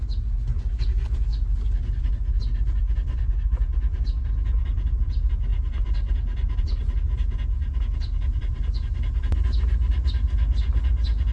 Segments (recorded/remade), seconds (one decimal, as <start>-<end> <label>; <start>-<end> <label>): 0.0-11.3 recorded